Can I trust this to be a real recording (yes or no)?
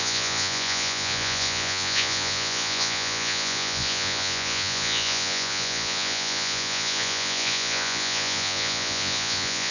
no